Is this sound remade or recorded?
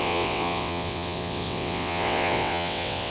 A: remade